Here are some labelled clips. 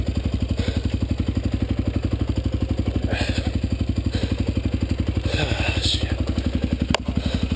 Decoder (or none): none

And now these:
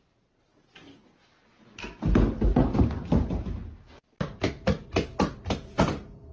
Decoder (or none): none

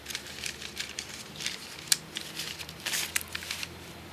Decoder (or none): none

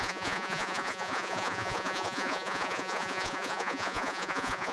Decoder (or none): vocoder, Vocos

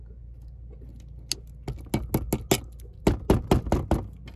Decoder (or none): none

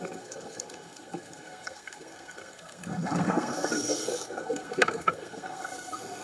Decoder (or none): codec, SNAC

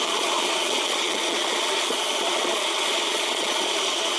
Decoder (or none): vocoder, Vocos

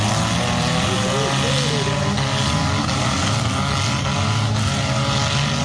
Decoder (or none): none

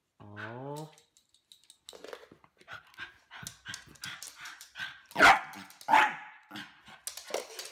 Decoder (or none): none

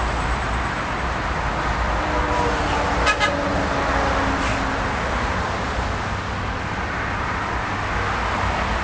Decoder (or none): none